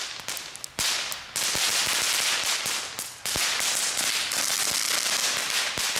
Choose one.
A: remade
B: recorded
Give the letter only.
B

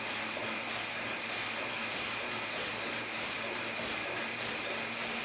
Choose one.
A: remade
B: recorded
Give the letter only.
B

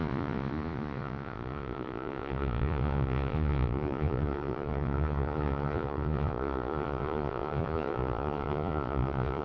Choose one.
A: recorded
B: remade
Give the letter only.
B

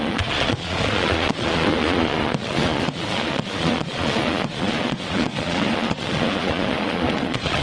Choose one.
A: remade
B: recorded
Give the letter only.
A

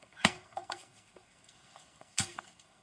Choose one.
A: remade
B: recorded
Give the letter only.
A